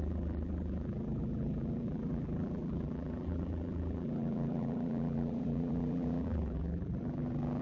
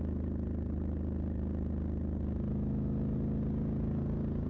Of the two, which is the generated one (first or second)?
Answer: first